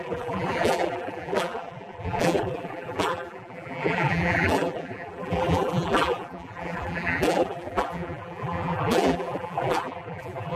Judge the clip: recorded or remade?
remade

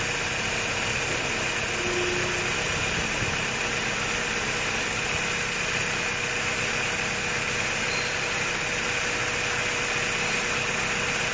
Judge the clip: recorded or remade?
recorded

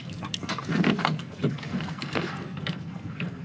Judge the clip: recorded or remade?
remade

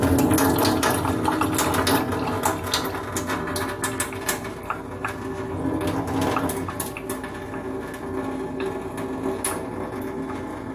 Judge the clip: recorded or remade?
recorded